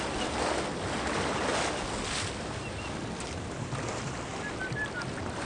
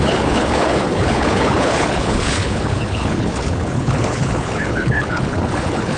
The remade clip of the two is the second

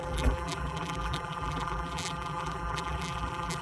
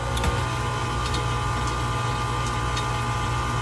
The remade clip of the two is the first